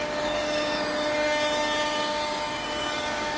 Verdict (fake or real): fake